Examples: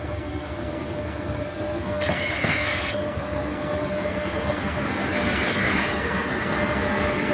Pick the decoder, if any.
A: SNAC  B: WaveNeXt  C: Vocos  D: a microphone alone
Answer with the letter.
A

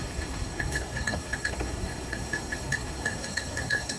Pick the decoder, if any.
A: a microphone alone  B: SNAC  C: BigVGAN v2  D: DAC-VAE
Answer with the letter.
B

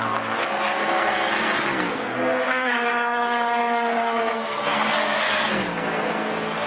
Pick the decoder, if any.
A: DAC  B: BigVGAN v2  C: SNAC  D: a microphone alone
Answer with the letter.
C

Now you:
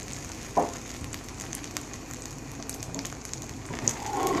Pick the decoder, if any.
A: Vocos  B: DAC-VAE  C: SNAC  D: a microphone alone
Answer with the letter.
D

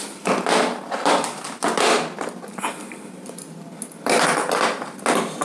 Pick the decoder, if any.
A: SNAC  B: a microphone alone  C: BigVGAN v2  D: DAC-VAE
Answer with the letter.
B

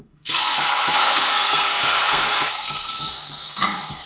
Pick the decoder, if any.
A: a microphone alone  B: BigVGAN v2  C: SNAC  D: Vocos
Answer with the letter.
C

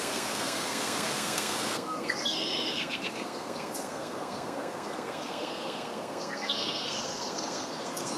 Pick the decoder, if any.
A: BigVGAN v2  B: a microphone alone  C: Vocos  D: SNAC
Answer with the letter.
D